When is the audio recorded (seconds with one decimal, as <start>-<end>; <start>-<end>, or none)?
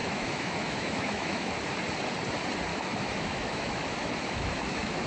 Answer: 1.5-2.7